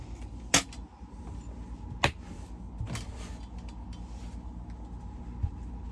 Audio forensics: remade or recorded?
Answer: recorded